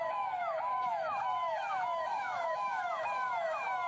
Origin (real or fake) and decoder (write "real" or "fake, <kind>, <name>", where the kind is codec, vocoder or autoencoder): fake, autoencoder, DAC-VAE